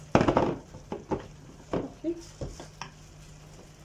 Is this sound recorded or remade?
recorded